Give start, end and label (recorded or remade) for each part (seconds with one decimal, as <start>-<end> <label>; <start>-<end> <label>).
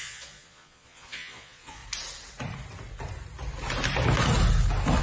0.0-1.8 remade; 1.8-5.0 recorded